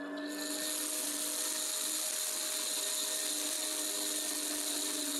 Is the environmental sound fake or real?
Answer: real